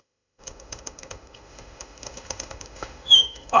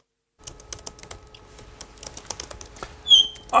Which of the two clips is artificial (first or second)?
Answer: first